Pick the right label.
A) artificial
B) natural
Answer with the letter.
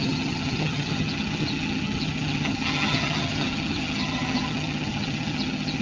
A